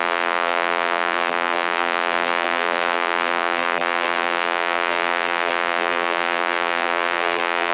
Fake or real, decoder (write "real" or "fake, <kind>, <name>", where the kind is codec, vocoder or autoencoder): fake, vocoder, BigVGAN v2